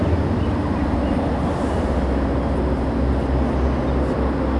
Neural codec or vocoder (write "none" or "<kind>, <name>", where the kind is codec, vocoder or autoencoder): none